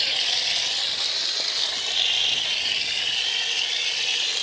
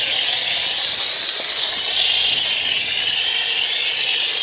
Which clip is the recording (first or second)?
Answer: first